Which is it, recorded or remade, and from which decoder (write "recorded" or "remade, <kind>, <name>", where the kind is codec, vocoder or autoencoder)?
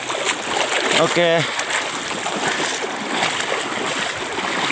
recorded